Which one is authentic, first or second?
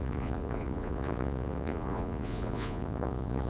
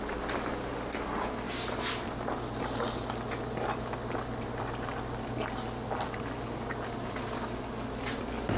second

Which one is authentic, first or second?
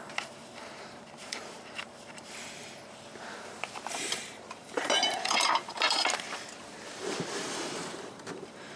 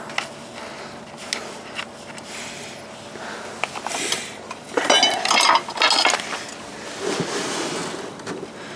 second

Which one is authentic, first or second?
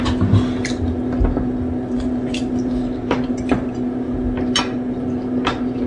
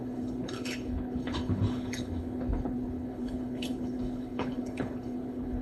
first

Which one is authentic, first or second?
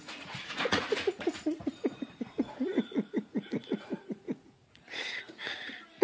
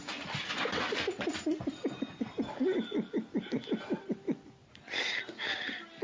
second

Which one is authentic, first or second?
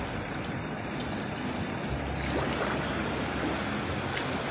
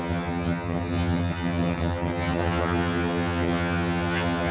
first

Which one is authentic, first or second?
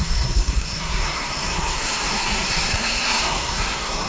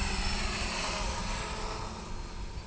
second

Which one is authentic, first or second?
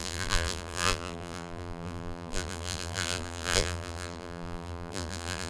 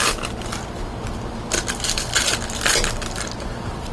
second